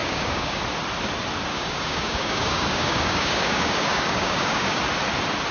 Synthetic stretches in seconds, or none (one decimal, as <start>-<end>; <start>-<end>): 0.0-0.6; 1.5-4.8